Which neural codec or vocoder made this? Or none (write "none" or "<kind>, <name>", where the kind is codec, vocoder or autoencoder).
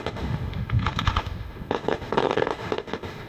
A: autoencoder, DAC-VAE